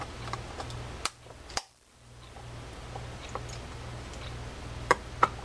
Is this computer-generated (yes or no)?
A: yes